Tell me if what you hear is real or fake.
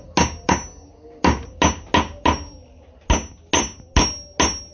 real